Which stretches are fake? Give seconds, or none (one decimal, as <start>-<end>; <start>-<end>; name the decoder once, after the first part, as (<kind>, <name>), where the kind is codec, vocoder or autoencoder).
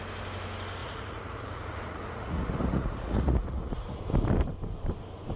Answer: 0.8-4.0 (vocoder, Vocos)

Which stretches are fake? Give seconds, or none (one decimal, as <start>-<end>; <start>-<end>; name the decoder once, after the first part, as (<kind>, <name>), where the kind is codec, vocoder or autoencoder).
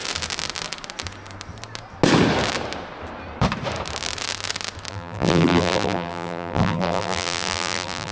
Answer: 4.9-8.1 (vocoder, BigVGAN v2)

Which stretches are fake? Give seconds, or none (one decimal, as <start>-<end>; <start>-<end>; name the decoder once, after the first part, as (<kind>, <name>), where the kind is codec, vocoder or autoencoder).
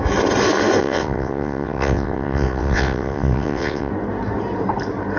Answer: 0.8-3.9 (vocoder, WaveNeXt)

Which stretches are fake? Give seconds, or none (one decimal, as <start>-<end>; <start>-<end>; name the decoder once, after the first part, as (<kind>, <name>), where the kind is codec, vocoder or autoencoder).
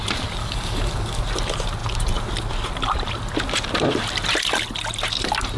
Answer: 0.4-1.2 (codec, DAC)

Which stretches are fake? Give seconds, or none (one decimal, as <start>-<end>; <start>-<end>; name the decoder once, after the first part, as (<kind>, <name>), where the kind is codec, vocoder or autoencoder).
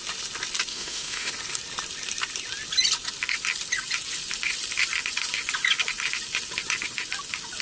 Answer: 0.7-1.3 (autoencoder, DAC-VAE)